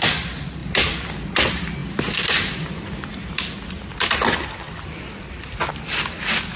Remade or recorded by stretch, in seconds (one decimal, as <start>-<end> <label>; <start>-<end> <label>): 0.0-6.6 recorded